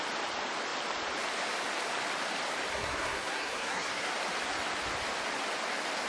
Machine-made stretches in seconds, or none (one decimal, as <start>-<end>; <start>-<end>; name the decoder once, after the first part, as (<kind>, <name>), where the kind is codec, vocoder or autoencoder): 2.7-4.1 (codec, SNAC)